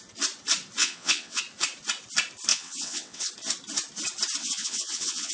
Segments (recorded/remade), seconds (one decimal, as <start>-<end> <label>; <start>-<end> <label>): 0.0-0.8 recorded; 0.8-1.4 remade; 1.4-2.5 recorded; 2.5-3.3 remade; 3.3-4.4 recorded; 4.4-5.3 remade